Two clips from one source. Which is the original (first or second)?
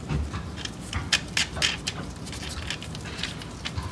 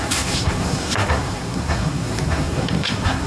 first